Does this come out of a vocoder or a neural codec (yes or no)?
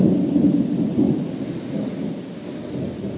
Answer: no